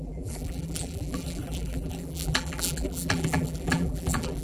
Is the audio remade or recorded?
remade